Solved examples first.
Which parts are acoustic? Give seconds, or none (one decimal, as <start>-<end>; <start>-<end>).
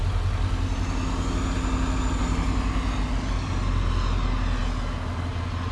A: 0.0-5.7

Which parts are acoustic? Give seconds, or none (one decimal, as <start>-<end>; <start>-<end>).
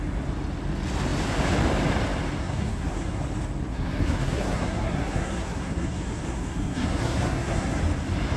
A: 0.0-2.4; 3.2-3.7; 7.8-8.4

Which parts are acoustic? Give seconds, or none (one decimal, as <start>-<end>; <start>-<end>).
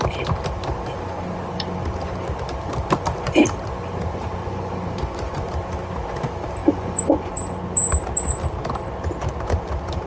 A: 0.0-4.4; 5.5-6.6; 7.3-10.1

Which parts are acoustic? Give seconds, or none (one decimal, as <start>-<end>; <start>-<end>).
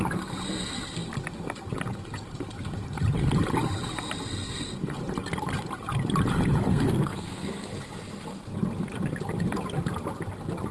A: 0.0-6.7; 7.7-10.7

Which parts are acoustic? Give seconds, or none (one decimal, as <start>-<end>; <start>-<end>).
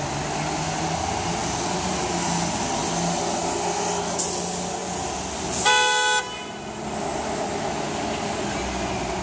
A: 0.0-9.2